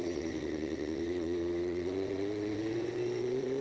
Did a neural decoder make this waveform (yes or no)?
yes